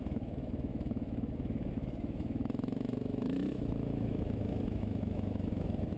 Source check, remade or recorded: remade